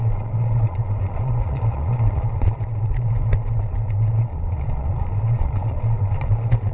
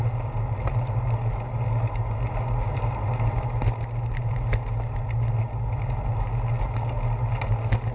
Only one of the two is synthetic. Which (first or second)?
first